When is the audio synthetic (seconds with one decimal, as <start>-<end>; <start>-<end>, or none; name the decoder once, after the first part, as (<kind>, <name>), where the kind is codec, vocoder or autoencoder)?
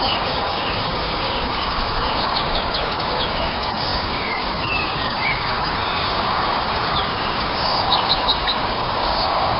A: 0.0-9.6 (codec, DAC)